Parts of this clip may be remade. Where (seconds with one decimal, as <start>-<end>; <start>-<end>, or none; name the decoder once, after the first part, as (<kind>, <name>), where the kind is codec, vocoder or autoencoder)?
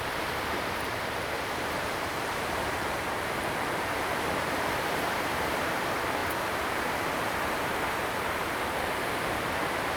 0.0-10.0 (vocoder, BigVGAN v2)